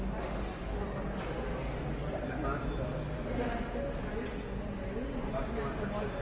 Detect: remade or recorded recorded